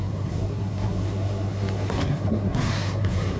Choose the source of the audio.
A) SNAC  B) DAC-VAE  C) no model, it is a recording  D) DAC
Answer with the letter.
A